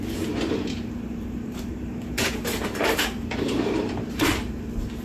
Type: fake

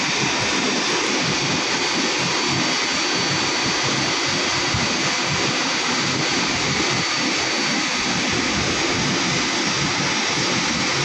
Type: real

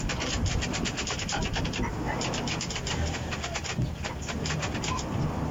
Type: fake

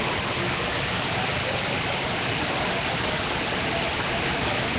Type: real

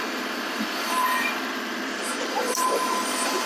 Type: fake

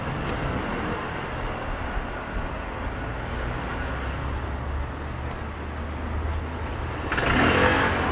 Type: real